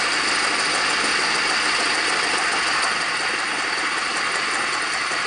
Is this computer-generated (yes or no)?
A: no